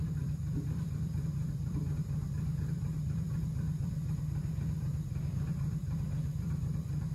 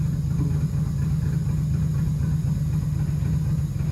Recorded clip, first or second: second